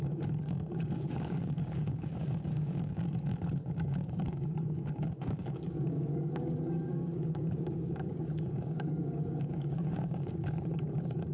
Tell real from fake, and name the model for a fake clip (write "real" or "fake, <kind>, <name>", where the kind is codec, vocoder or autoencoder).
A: fake, codec, DAC